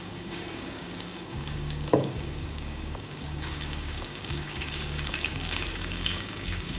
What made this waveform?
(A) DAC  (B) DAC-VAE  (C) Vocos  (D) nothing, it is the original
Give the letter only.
A